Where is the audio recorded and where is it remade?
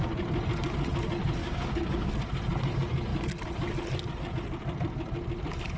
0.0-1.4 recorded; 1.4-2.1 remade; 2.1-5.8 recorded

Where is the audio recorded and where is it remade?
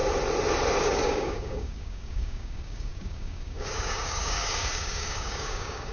0.0-0.8 recorded; 0.8-5.9 remade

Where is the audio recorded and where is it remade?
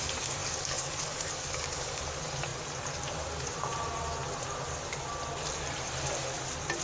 0.0-0.4 recorded; 0.4-2.0 remade; 2.0-6.8 recorded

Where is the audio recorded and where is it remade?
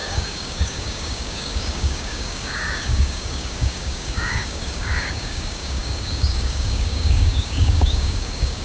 0.0-8.6 remade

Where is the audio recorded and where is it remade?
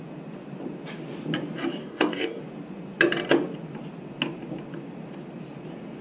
0.0-1.8 recorded; 1.8-2.4 remade; 2.4-6.0 recorded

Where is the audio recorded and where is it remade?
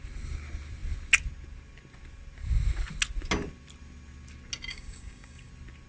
0.0-4.7 recorded; 4.7-5.5 remade; 5.5-5.9 recorded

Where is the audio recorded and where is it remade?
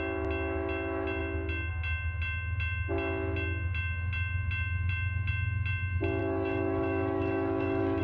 0.0-6.2 recorded; 6.2-8.0 remade